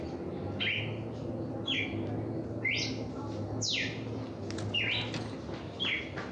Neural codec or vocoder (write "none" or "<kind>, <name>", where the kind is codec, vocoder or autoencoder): none